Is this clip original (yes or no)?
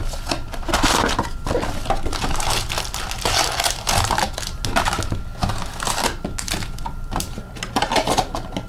yes